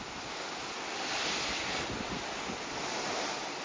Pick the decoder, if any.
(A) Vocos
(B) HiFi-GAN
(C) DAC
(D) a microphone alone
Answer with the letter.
D